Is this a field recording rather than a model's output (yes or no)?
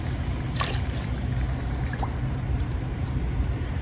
no